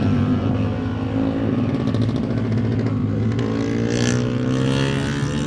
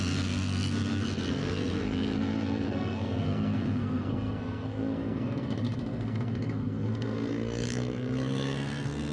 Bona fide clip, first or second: first